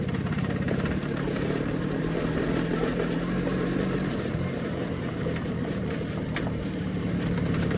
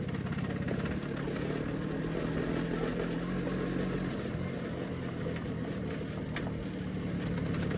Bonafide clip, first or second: second